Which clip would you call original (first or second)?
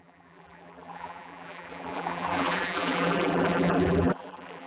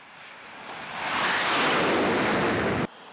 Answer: second